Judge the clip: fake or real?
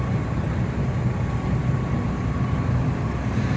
real